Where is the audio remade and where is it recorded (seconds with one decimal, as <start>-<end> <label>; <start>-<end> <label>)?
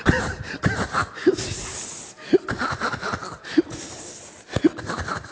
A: 0.0-1.0 remade; 1.0-4.2 recorded; 4.2-5.3 remade